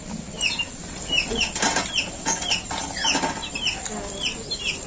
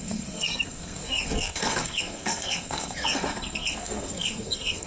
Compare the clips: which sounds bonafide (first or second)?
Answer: first